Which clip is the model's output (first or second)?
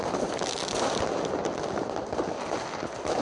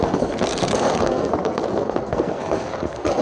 second